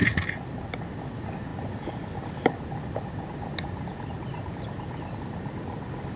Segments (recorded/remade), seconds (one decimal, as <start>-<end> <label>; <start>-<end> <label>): 0.0-6.2 recorded